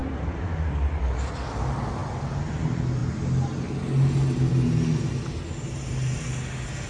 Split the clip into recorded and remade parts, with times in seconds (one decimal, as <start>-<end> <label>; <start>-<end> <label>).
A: 0.0-1.0 remade; 1.0-2.0 recorded; 2.0-2.6 remade; 2.6-6.9 recorded